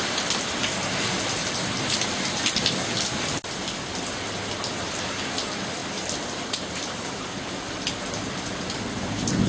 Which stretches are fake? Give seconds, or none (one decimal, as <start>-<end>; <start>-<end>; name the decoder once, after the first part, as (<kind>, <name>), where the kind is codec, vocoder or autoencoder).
5.8-7.3 (vocoder, BigVGAN v2)